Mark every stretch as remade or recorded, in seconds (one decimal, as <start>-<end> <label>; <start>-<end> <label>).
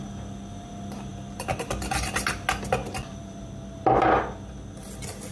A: 0.0-1.1 recorded; 1.1-1.9 remade; 1.9-3.1 recorded; 3.1-3.9 remade; 3.9-5.3 recorded